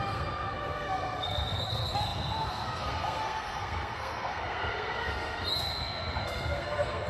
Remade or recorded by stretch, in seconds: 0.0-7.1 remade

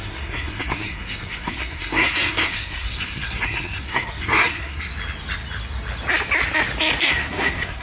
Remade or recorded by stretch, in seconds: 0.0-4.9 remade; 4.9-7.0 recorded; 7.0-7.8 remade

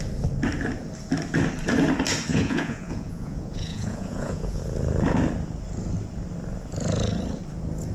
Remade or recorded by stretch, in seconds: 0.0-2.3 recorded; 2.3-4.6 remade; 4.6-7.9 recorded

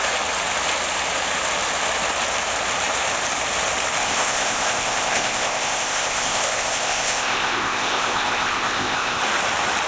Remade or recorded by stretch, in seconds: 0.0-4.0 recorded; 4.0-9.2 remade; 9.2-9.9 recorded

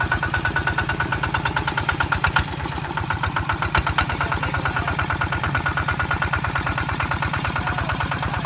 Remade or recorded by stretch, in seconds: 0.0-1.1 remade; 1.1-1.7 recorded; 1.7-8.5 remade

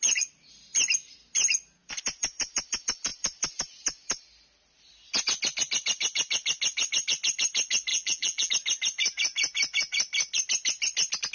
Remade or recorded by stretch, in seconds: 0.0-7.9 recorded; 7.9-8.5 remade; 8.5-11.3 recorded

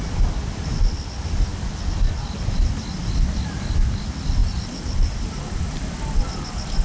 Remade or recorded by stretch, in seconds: 0.0-6.8 recorded